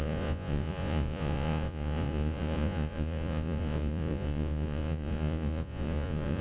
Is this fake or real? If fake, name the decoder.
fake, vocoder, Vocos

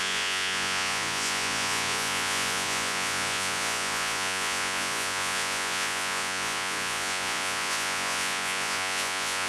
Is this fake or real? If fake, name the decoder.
fake, vocoder, Vocos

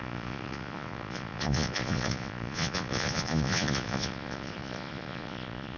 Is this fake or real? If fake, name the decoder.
fake, vocoder, Vocos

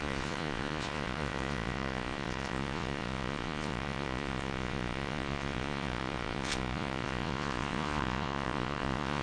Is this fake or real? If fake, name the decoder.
fake, vocoder, Vocos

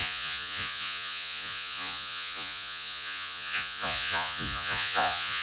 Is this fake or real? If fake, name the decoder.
fake, vocoder, Vocos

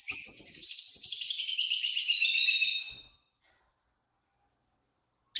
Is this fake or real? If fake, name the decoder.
real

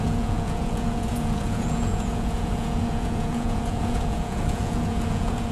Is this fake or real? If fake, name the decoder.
fake, vocoder, Vocos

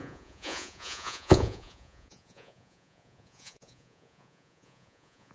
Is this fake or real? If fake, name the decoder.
fake, vocoder, Vocos